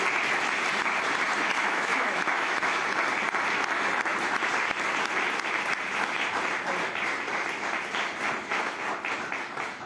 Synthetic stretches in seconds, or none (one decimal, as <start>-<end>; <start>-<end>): 1.6-2.8